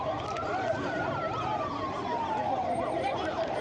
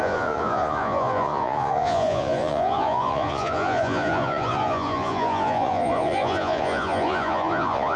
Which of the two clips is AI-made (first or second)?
second